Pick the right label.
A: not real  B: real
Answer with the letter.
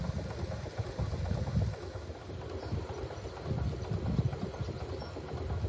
B